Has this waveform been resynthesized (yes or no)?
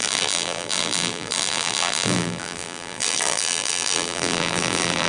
yes